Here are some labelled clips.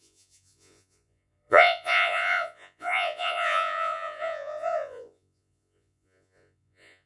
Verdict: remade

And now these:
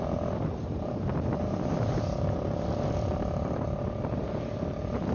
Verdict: recorded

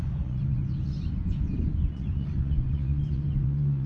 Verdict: remade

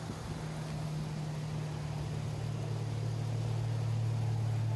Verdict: recorded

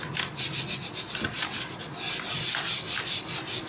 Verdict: recorded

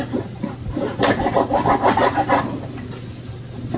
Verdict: recorded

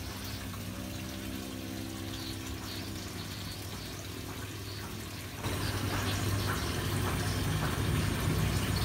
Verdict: recorded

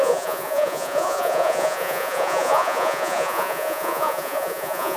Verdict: remade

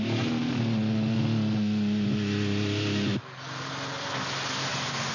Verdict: recorded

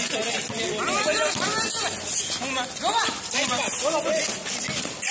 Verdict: recorded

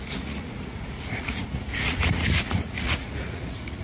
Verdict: remade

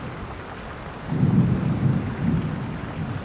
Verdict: recorded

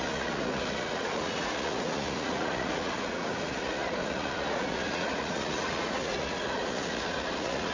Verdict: remade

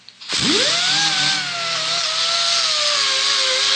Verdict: recorded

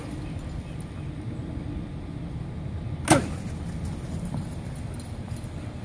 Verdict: recorded